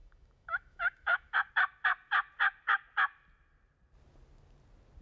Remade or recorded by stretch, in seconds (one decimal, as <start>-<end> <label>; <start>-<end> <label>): 0.0-1.5 remade; 1.5-5.0 recorded